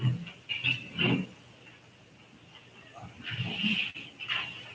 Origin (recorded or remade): recorded